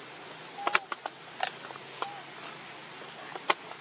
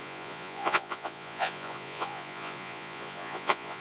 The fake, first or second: second